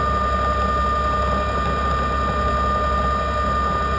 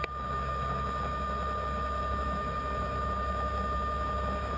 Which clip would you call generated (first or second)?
second